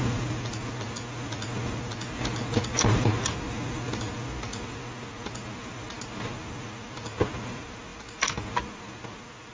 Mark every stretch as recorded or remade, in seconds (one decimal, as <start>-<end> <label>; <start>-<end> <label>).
0.0-9.5 recorded